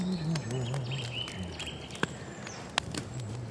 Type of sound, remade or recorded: recorded